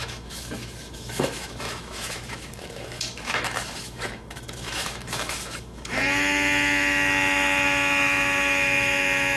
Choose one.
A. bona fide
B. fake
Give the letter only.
B